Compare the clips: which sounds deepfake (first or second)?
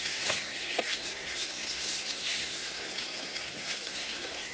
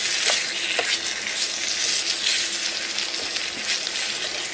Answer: first